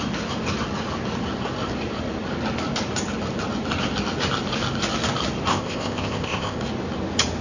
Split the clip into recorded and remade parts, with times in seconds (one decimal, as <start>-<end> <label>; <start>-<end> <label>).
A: 0.0-5.5 recorded; 5.5-6.6 remade; 6.6-7.4 recorded